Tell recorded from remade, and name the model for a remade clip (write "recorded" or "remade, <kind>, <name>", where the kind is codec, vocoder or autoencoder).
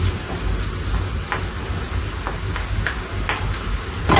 recorded